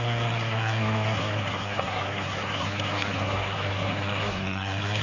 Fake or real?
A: fake